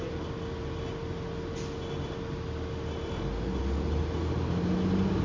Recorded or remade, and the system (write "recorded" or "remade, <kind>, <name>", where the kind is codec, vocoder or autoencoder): recorded